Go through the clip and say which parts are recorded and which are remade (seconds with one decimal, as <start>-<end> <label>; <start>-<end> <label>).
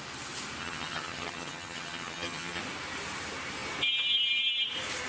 0.0-0.6 recorded; 0.6-2.6 remade; 2.6-5.1 recorded